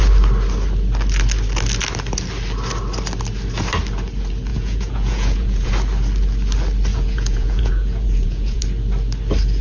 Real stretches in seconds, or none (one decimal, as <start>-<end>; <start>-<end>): 0.0-4.5; 5.7-6.9; 8.6-9.6